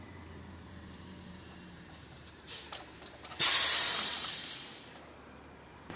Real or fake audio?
fake